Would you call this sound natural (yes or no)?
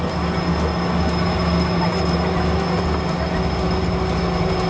yes